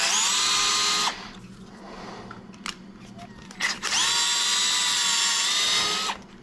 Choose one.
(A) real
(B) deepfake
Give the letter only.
A